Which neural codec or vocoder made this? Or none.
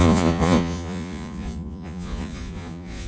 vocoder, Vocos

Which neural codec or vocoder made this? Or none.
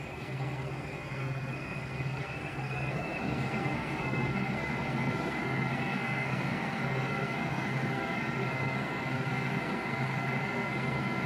codec, SNAC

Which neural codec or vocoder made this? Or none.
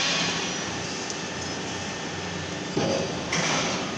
none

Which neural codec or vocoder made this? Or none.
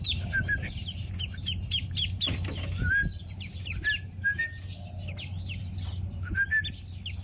none